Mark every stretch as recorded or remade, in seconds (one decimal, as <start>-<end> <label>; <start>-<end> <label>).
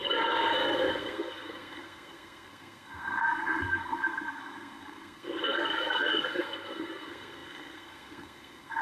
0.0-8.8 remade